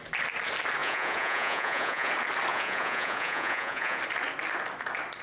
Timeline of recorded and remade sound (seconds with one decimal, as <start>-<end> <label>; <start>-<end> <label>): 0.0-0.8 recorded; 0.8-2.1 remade; 2.1-2.5 recorded; 2.5-4.0 remade; 4.0-5.2 recorded